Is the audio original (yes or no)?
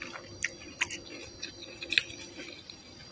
yes